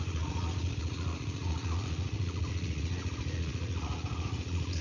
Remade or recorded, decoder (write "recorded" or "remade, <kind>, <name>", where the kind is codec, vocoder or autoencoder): remade, vocoder, Vocos